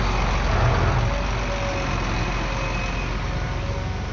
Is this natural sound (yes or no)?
yes